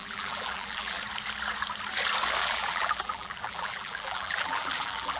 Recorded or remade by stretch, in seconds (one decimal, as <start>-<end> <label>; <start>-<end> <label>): 0.0-1.0 remade; 1.0-2.4 recorded; 2.4-5.2 remade